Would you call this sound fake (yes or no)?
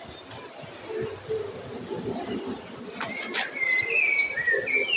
no